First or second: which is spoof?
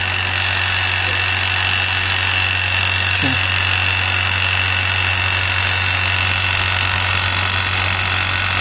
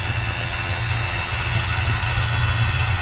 second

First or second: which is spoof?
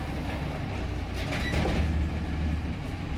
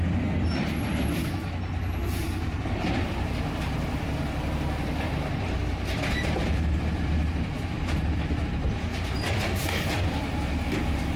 second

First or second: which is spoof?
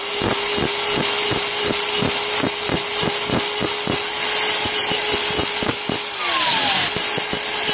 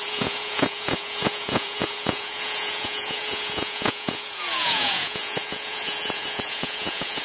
second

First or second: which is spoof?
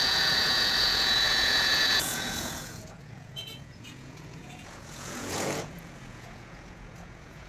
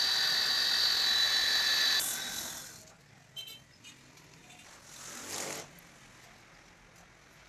first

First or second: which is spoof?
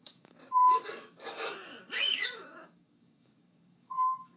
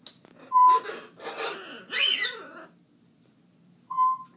first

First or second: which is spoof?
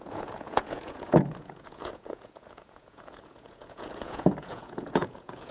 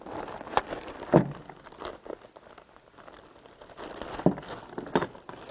first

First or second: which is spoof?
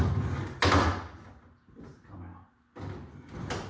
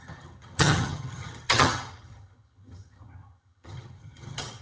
second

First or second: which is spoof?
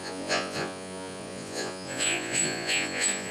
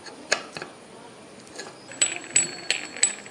first